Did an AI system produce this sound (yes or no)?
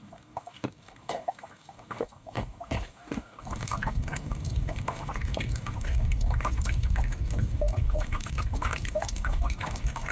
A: yes